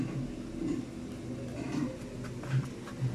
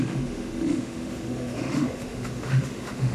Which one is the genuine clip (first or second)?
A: first